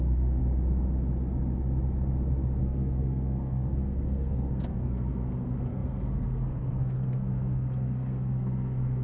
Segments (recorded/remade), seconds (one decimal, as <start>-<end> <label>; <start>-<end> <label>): 0.0-0.4 remade; 0.4-2.6 recorded; 2.6-9.0 remade